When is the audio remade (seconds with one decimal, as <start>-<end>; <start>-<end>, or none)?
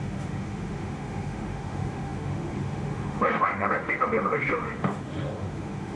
0.0-6.0